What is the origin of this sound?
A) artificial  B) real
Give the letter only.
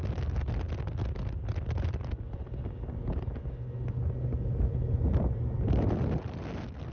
B